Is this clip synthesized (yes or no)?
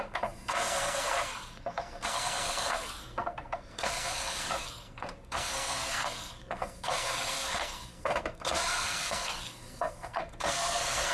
yes